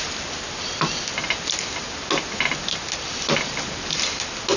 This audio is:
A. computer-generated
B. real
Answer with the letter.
B